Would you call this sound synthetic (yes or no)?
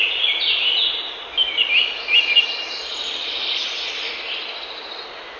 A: no